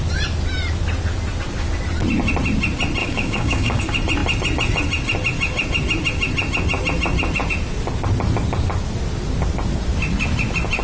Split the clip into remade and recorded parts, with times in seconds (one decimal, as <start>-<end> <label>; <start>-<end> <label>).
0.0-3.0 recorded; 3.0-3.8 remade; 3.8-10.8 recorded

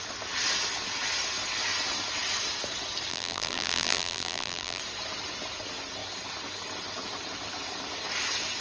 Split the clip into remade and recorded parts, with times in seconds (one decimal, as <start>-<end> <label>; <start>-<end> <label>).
0.0-3.1 recorded; 3.1-4.8 remade; 4.8-8.6 recorded

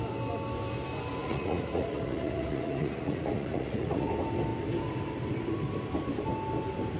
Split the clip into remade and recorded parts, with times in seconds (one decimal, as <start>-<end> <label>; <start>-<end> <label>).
0.0-1.2 recorded; 1.2-4.1 remade; 4.1-7.0 recorded

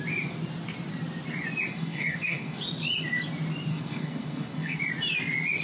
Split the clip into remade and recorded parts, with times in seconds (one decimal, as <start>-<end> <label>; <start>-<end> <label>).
0.0-1.7 recorded; 1.7-2.6 remade; 2.6-3.7 recorded; 3.7-4.8 remade; 4.8-5.6 recorded